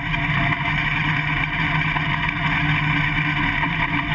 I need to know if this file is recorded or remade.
recorded